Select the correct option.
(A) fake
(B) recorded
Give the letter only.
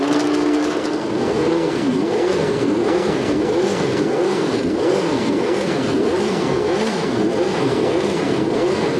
A